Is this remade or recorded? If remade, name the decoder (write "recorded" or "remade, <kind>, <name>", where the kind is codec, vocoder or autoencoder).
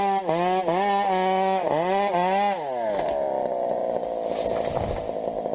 recorded